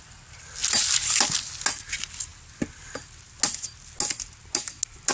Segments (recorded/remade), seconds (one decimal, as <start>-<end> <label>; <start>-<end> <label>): 0.0-5.1 recorded